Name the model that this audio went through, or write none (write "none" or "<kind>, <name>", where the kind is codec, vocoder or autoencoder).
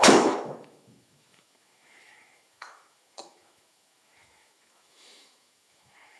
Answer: autoencoder, DAC-VAE